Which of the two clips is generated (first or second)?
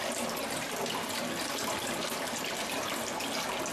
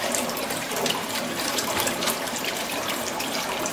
second